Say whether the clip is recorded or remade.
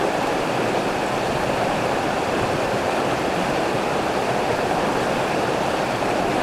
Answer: remade